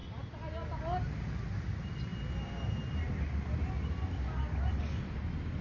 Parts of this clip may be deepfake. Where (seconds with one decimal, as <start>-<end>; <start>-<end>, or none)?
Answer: none